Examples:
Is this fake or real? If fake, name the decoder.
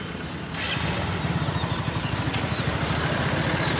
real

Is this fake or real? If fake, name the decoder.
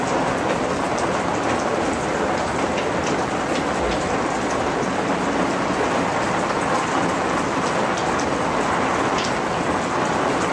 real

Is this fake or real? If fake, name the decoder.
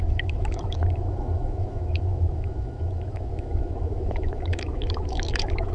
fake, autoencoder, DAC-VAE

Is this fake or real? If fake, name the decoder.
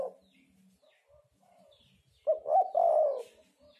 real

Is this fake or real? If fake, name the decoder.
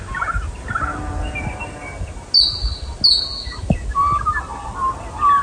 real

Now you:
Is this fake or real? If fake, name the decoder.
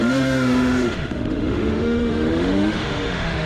fake, autoencoder, DAC-VAE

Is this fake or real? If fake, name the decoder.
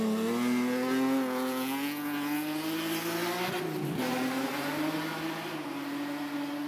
real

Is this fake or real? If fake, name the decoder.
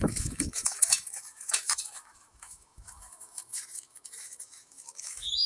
fake, autoencoder, DAC-VAE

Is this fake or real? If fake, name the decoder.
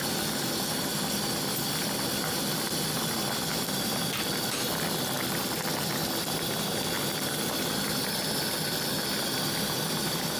real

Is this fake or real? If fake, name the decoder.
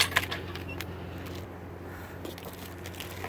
real